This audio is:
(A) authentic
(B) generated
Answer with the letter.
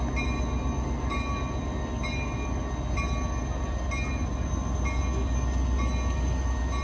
A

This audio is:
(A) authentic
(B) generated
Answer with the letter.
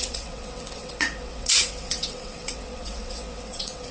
B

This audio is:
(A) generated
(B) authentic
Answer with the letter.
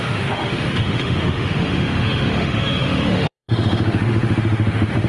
A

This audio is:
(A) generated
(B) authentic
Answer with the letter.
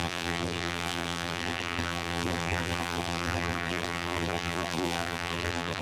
A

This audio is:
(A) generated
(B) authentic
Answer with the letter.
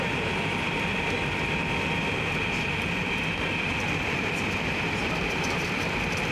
A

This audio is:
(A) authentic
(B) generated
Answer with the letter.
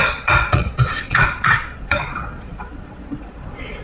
B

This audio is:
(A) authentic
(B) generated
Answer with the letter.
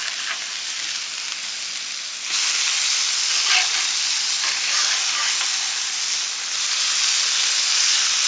A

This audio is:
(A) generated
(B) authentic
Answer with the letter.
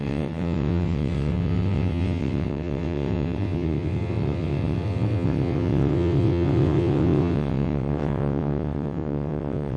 A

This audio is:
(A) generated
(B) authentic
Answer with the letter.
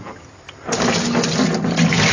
B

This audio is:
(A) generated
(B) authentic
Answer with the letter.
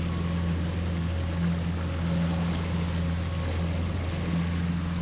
B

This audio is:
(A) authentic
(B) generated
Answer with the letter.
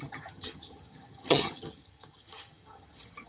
B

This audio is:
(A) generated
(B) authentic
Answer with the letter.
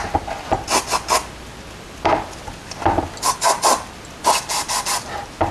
B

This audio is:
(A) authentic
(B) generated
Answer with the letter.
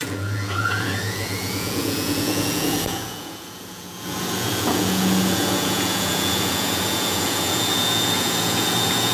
B